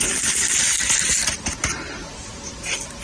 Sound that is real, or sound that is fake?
real